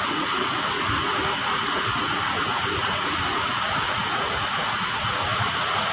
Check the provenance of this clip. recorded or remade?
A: remade